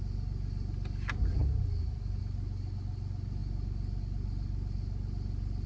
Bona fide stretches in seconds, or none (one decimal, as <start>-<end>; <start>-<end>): 0.0-5.7